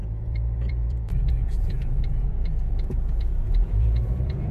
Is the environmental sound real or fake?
fake